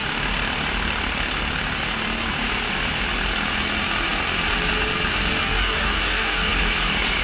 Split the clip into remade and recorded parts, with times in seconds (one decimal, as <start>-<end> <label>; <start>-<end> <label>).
0.0-5.4 recorded; 5.4-6.5 remade; 6.5-7.2 recorded